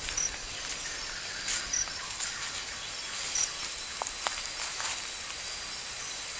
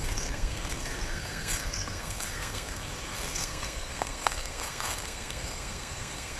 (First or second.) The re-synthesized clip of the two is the second